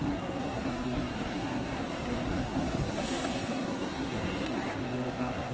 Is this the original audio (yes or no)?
no